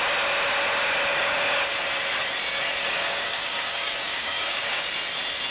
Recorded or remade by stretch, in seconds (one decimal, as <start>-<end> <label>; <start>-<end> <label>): 0.0-1.1 recorded; 1.1-1.6 remade; 1.6-2.8 recorded; 2.8-4.9 remade; 4.9-5.5 recorded